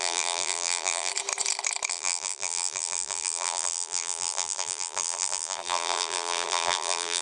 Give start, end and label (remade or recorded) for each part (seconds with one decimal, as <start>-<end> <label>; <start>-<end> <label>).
0.0-1.1 remade; 1.1-1.9 recorded; 1.9-7.2 remade